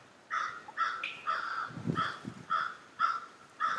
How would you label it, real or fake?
real